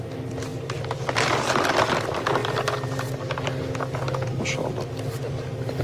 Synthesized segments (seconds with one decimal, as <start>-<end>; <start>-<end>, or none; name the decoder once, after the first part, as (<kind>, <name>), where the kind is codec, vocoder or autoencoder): none